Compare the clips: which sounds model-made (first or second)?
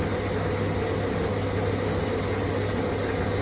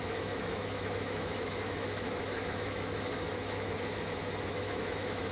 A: second